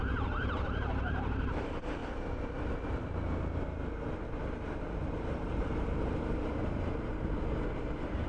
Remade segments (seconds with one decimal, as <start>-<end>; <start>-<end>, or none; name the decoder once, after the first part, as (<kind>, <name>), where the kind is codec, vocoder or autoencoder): 0.0-2.0 (vocoder, BigVGAN v2); 4.2-8.3